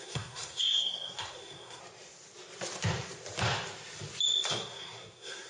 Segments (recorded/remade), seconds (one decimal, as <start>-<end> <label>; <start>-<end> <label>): 0.0-1.8 remade; 1.8-4.5 recorded; 4.5-5.5 remade